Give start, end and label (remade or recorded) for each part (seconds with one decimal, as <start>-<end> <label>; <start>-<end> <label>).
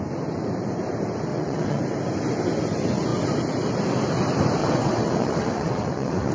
0.0-1.3 recorded; 1.3-1.8 remade; 1.8-4.6 recorded; 4.6-6.3 remade